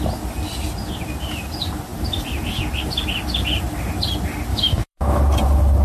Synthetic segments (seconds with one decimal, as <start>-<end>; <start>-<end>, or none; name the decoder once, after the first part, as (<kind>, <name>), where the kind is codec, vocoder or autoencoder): 4.5-5.2 (autoencoder, DAC-VAE)

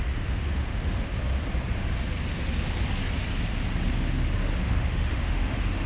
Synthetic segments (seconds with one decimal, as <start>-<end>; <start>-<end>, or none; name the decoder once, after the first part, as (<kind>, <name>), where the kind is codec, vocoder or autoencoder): 0.0-1.1 (autoencoder, DAC-VAE); 4.6-5.9

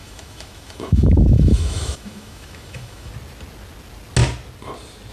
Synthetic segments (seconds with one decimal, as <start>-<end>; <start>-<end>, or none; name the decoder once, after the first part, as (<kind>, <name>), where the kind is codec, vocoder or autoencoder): 0.0-3.1 (autoencoder, DAC-VAE)

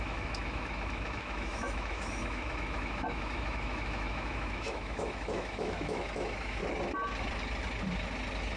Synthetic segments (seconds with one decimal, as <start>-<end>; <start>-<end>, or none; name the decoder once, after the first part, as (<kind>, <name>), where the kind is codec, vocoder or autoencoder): 0.0-6.6 (autoencoder, DAC-VAE)